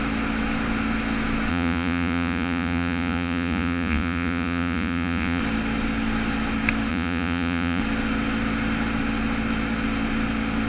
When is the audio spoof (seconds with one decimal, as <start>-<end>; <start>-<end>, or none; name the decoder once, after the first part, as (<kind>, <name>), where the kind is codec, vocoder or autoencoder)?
1.5-5.4 (vocoder, Vocos); 6.9-7.8

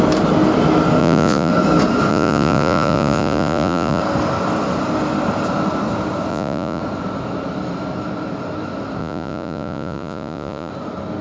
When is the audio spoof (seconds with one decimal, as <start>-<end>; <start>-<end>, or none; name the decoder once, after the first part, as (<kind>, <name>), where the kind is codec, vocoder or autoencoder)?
1.0-1.5 (vocoder, Vocos); 2.1-4.0; 6.3-6.8; 9.0-10.7